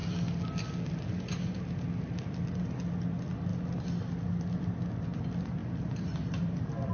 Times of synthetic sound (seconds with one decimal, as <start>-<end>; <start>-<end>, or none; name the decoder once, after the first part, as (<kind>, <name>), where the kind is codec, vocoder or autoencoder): 5.6-6.9 (vocoder, BigVGAN v2)

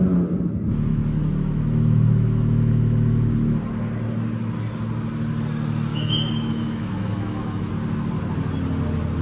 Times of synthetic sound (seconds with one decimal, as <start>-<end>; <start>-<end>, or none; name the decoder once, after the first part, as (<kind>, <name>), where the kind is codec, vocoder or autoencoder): 0.9-3.3 (autoencoder, DAC-VAE); 5.9-7.7